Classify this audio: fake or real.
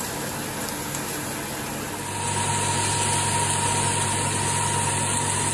real